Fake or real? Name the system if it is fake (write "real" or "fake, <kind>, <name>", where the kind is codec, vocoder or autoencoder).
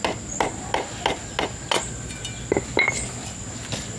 real